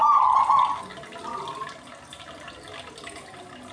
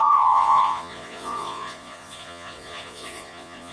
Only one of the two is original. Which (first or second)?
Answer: first